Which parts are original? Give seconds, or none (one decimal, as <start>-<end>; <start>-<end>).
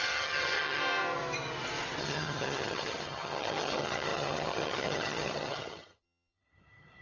0.8-2.0